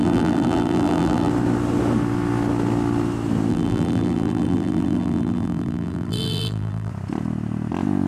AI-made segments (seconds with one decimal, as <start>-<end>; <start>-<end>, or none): 0.0-1.3; 3.5-6.9